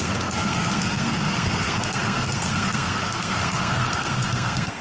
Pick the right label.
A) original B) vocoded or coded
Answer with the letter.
B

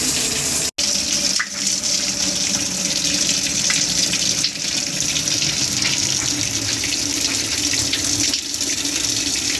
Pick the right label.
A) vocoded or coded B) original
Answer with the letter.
B